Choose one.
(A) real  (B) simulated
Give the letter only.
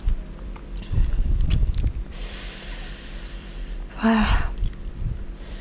B